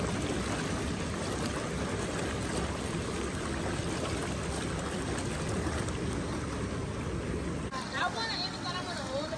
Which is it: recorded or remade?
recorded